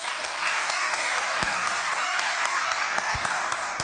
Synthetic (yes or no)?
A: yes